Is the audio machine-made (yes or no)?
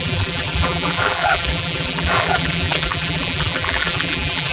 yes